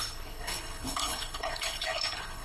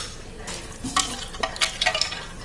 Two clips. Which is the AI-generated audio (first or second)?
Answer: first